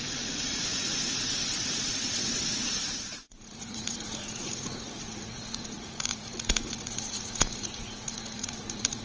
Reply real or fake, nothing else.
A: fake